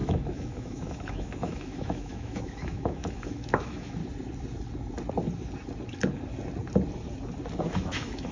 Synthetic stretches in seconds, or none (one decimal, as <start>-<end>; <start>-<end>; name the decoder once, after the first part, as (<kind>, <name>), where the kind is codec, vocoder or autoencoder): 0.0-4.0 (autoencoder, DAC-VAE); 7.6-8.3